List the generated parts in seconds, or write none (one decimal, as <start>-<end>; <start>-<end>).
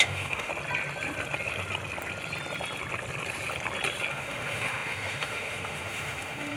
0.0-0.5; 4.1-6.6